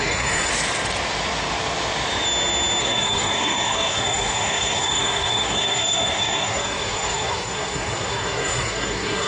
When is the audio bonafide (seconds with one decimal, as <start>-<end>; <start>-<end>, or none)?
0.5-2.8